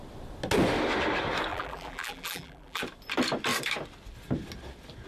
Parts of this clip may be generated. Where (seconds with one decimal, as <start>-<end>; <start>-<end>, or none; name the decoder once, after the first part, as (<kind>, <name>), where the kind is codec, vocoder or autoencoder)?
1.5-2.8 (vocoder, BigVGAN v2)